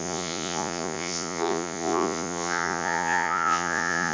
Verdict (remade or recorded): remade